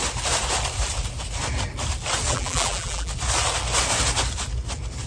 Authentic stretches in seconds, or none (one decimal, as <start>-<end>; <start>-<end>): 0.0-2.3; 3.1-5.1